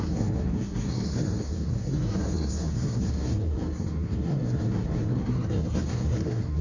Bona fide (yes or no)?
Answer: no